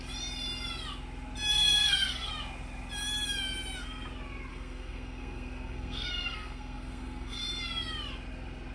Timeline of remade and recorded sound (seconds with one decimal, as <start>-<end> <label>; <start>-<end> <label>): 0.0-1.5 recorded; 1.5-2.3 remade; 2.3-4.5 recorded; 4.5-7.4 remade; 7.4-8.7 recorded